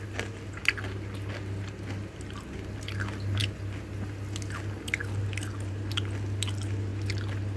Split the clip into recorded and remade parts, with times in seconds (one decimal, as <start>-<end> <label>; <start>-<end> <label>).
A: 0.0-7.6 recorded